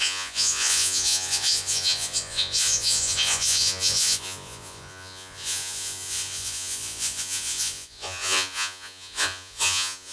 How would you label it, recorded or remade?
remade